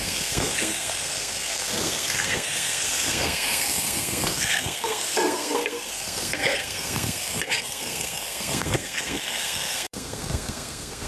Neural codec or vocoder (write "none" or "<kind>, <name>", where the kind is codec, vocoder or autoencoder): codec, SNAC